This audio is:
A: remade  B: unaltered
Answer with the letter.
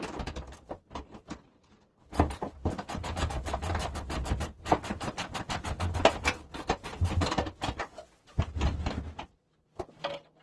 B